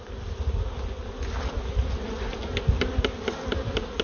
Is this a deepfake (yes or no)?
no